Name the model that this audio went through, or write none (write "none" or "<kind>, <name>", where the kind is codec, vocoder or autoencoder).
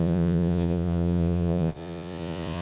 vocoder, Vocos